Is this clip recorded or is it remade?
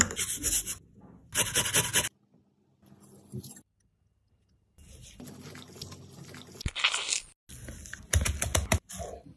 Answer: recorded